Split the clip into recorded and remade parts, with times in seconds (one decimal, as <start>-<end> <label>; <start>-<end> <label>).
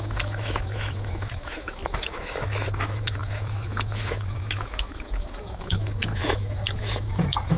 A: 0.0-7.6 remade